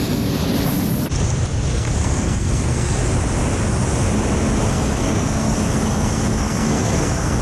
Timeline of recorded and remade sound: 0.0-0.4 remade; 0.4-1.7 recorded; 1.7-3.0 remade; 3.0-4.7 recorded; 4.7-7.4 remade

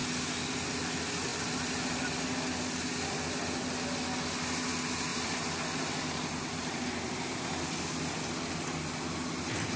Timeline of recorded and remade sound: 0.0-1.3 recorded; 1.3-2.1 remade; 2.1-5.1 recorded; 5.1-8.3 remade; 8.3-9.8 recorded

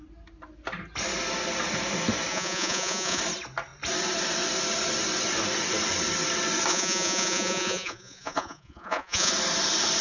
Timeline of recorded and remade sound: 0.0-2.3 recorded; 2.3-3.2 remade; 3.2-6.7 recorded; 6.7-9.3 remade; 9.3-10.0 recorded

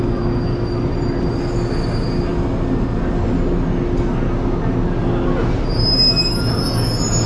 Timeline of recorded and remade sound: 0.0-7.3 recorded

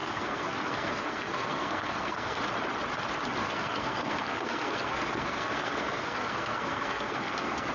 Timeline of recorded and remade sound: 0.0-2.4 remade; 2.4-3.4 recorded; 3.4-7.7 remade

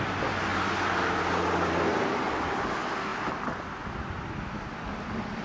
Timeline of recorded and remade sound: 0.0-5.4 recorded

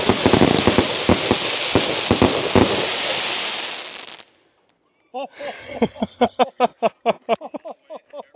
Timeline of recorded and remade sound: 0.0-5.6 recorded; 5.6-6.4 remade; 6.4-8.4 recorded

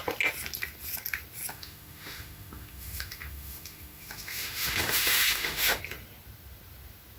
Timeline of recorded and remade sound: 0.0-1.5 recorded; 1.5-5.8 remade; 5.8-7.2 recorded